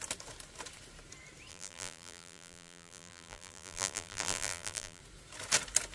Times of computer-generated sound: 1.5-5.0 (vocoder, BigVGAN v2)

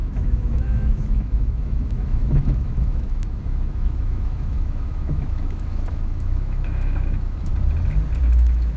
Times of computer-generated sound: 0.0-7.5 (autoencoder, DAC-VAE); 8.2-8.8

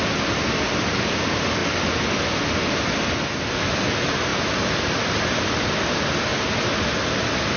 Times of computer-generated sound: none

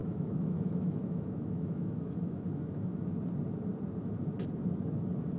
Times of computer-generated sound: 0.0-3.2 (autoencoder, DAC-VAE)

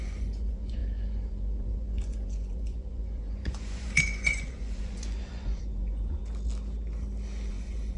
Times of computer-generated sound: 0.0-6.2 (vocoder, Vocos); 7.5-8.0

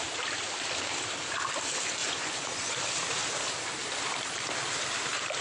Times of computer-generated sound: 2.0-2.7 (vocoder, Vocos)

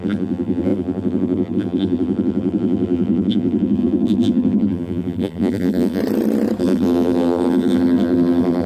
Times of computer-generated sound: 0.0-6.0 (vocoder, BigVGAN v2); 6.6-8.7

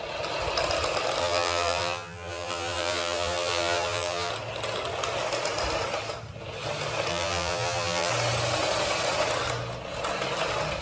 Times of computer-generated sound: 1.2-4.3 (vocoder, BigVGAN v2); 7.1-8.1